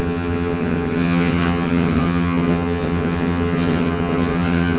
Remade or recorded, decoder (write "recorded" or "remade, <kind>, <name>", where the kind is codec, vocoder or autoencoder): remade, vocoder, HiFi-GAN